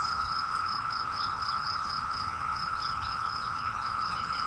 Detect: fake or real fake